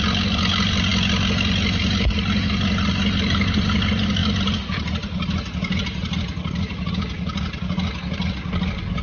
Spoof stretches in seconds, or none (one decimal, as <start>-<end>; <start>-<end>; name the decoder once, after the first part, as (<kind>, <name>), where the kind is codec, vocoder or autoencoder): none